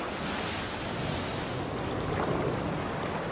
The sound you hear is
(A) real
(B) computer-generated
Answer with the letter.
A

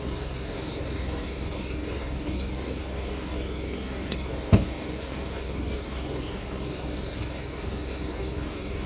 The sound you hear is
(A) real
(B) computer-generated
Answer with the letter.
B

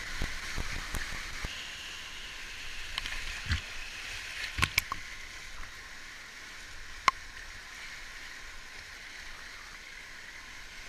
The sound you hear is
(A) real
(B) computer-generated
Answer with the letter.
A